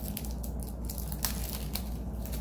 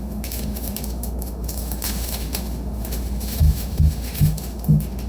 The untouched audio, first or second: first